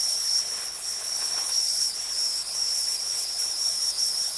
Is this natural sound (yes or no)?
no